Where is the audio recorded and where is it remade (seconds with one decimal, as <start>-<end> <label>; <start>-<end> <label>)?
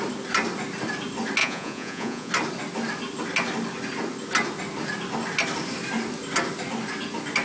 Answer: 0.0-1.4 recorded; 1.4-2.3 remade; 2.3-7.4 recorded